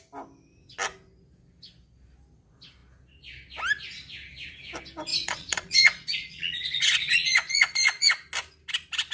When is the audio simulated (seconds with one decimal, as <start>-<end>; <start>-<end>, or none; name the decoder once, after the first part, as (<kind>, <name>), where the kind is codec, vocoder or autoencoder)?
5.1-8.1 (vocoder, Vocos)